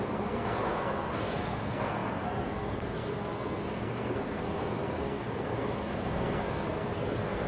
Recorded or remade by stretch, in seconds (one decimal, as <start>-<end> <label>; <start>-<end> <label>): 0.0-7.5 remade

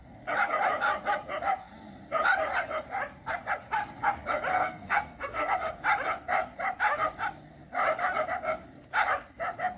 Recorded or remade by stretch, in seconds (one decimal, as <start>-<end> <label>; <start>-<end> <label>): 0.0-4.5 recorded; 4.5-5.7 remade; 5.7-9.8 recorded

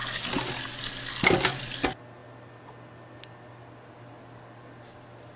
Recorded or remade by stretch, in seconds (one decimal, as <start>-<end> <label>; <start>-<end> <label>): 0.0-5.4 recorded